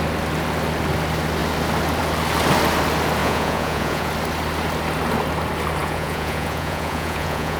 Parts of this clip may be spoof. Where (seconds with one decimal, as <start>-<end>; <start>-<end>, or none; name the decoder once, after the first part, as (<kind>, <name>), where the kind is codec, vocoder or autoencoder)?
3.2-4.1 (vocoder, Vocos); 5.8-7.6